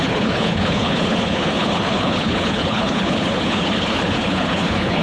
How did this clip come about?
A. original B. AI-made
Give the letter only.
B